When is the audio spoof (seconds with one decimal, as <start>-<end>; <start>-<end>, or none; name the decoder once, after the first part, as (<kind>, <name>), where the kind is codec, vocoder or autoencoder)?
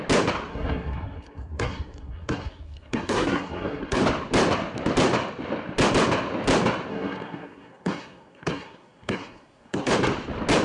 0.5-4.0 (codec, SNAC); 6.9-9.9